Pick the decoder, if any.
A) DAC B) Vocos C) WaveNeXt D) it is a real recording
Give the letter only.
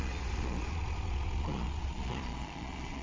B